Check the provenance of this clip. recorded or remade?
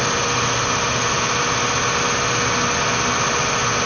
recorded